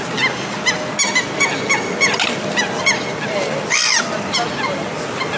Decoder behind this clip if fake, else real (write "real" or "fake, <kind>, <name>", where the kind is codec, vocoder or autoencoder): real